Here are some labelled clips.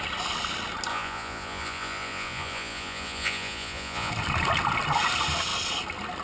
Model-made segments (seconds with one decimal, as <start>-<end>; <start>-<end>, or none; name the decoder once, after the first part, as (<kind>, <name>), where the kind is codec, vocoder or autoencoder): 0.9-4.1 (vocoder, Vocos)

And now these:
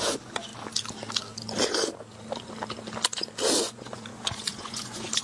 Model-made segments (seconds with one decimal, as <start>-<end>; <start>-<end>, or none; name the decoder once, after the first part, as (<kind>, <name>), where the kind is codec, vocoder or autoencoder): 0.0-0.5 (vocoder, Vocos); 3.6-5.2

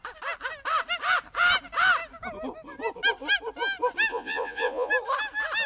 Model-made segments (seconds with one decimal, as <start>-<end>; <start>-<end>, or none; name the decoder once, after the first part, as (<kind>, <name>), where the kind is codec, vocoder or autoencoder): 4.1-4.9 (vocoder, Vocos)

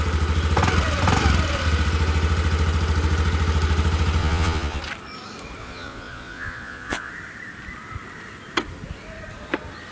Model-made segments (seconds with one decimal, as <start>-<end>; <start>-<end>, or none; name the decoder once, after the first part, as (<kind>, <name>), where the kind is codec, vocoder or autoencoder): 4.2-4.8 (vocoder, Vocos); 5.6-7.1

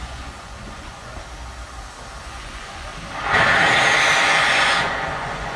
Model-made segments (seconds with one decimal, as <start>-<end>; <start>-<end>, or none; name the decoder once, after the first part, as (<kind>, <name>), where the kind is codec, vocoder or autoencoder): 0.0-1.1 (vocoder, Vocos); 2.2-2.9; 4.2-5.6

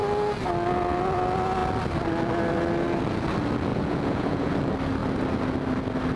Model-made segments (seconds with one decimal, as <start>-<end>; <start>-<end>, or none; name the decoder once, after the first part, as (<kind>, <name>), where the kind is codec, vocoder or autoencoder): 3.7-4.5 (vocoder, Vocos)

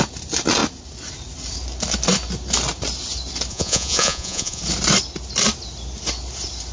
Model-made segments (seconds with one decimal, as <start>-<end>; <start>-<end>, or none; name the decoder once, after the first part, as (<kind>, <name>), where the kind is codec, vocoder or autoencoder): 3.5-4.6 (vocoder, Vocos)